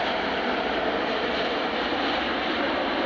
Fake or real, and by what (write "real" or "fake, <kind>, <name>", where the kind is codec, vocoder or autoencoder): real